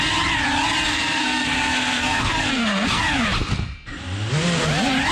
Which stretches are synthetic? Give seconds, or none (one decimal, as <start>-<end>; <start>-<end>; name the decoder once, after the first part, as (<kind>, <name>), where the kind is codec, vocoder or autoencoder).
0.9-3.0 (codec, SNAC)